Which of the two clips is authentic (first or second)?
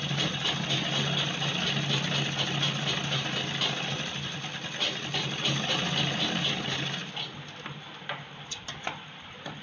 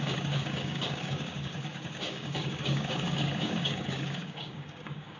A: first